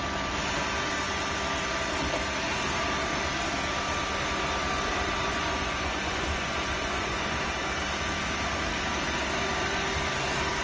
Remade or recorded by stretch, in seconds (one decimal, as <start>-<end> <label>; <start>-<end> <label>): 0.0-5.2 recorded; 5.2-7.4 remade; 7.4-10.6 recorded